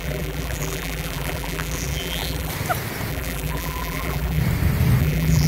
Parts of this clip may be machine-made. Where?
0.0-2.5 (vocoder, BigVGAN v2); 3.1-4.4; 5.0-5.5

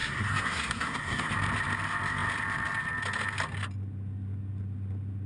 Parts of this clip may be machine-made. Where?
0.0-1.3 (codec, SNAC)

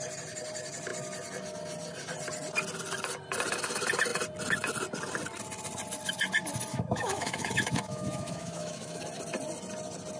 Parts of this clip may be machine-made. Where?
6.7-9.0 (autoencoder, DAC-VAE)

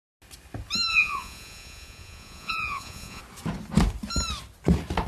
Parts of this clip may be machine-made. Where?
0.9-3.2 (vocoder, Vocos)

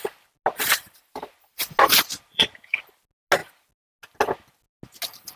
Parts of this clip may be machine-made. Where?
2.3-3.0 (vocoder, BigVGAN v2)

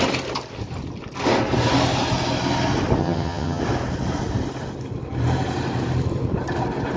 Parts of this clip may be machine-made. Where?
3.0-3.6 (vocoder, HiFi-GAN)

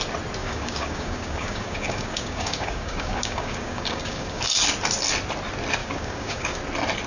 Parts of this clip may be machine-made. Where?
0.4-4.4 (codec, DAC); 5.8-6.6